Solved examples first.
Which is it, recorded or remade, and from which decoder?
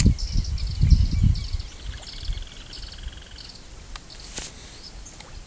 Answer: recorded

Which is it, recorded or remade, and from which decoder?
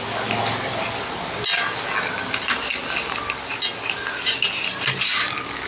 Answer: recorded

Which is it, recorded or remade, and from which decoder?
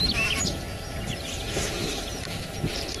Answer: recorded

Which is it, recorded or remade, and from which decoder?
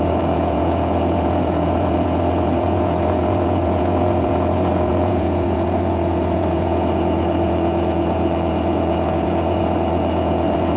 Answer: remade, vocoder, Vocos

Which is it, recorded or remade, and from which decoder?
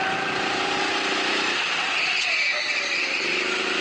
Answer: recorded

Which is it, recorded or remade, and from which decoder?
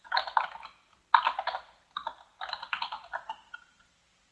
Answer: recorded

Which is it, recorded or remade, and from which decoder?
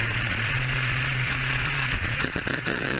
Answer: remade, vocoder, Vocos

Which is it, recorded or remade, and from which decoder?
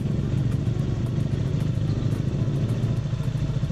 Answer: recorded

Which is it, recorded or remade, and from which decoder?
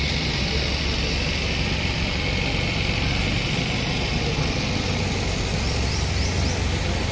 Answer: recorded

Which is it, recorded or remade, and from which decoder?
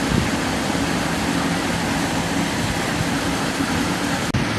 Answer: recorded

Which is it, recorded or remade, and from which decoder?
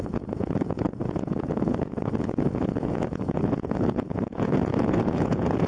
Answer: remade, vocoder, Vocos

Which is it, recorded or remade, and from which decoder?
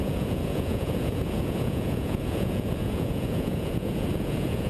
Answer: remade, vocoder, Vocos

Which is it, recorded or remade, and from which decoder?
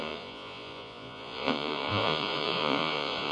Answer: remade, vocoder, Vocos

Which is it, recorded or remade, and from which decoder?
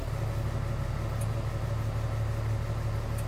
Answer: recorded